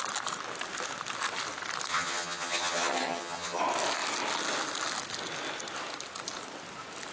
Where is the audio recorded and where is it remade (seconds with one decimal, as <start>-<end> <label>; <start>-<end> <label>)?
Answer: 0.0-1.9 recorded; 1.9-3.6 remade; 3.6-7.1 recorded